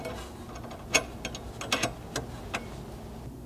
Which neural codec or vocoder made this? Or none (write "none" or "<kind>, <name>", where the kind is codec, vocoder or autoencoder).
none